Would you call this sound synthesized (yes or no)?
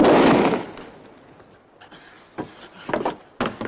no